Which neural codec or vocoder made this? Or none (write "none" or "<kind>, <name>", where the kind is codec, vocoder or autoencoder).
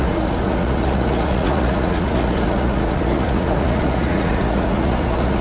vocoder, Vocos